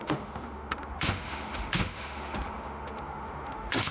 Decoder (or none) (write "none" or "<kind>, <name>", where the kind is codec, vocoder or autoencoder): autoencoder, DAC-VAE